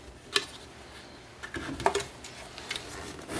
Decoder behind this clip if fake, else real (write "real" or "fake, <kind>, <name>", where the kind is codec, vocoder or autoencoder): real